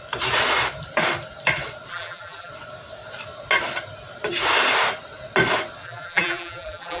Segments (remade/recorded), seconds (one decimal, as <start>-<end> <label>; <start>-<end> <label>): 0.0-1.9 recorded; 1.9-2.5 remade; 2.5-5.8 recorded; 5.8-7.0 remade